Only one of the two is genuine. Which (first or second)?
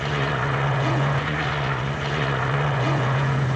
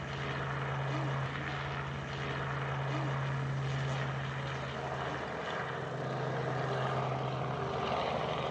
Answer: second